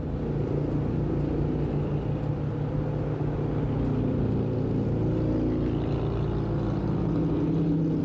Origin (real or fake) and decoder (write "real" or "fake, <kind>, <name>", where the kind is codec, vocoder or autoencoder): real